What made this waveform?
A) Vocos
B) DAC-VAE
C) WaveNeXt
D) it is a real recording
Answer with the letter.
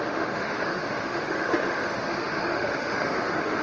B